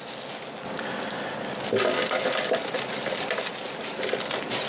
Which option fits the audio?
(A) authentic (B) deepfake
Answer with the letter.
A